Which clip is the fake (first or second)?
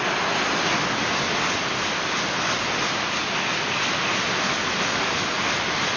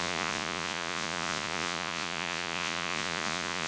second